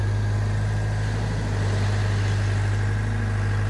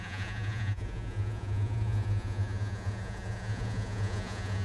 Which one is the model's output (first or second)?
second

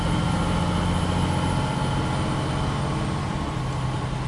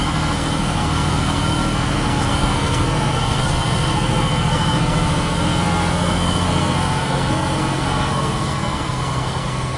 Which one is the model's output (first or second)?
second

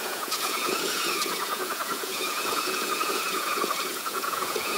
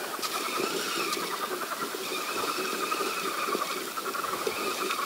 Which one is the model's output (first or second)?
first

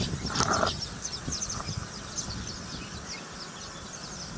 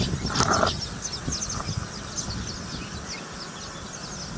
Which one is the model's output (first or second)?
first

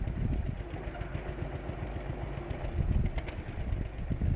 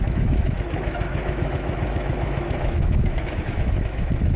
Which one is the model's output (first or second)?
second